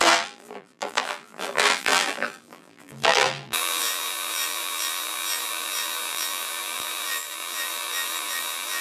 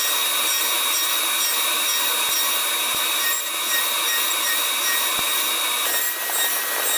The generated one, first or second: first